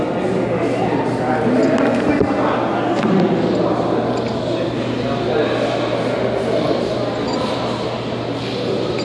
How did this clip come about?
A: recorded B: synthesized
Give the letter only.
A